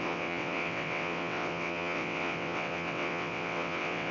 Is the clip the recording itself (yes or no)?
no